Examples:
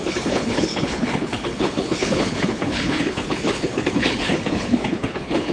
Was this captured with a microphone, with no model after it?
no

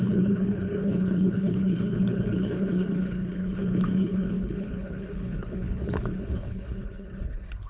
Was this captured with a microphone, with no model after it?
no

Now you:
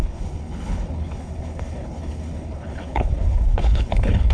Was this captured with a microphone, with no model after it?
no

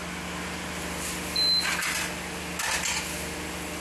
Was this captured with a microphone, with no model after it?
yes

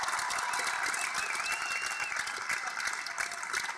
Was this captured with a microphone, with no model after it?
yes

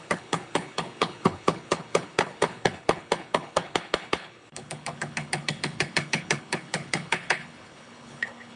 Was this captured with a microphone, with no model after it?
no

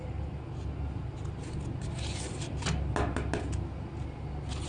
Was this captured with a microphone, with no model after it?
yes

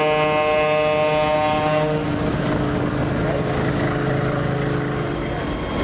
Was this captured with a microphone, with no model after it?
yes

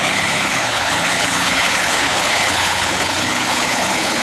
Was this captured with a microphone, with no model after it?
no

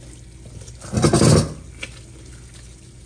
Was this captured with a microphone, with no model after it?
yes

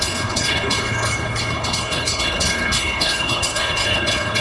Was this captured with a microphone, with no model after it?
no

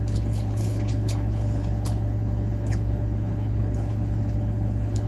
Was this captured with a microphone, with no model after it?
no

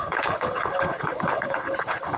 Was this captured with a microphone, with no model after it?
no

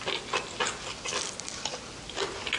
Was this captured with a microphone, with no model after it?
yes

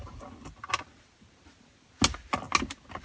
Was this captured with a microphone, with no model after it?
yes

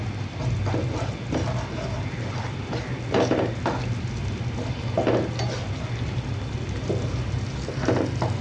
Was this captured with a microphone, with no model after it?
yes